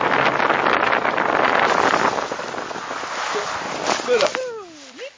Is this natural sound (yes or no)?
yes